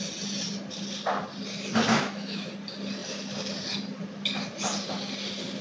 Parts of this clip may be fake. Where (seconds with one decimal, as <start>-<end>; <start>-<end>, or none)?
1.9-2.5